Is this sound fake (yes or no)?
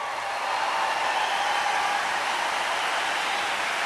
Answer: no